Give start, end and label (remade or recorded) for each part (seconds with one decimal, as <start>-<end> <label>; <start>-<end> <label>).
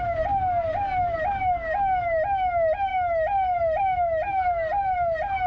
0.0-5.5 recorded